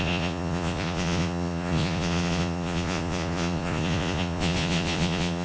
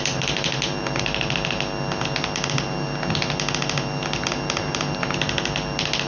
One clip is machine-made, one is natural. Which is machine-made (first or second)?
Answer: first